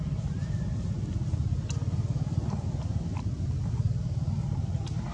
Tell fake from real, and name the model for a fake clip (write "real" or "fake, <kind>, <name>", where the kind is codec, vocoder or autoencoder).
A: real